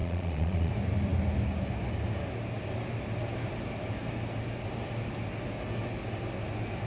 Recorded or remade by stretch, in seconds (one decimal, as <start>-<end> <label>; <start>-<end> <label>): 0.0-0.7 remade; 0.7-6.9 recorded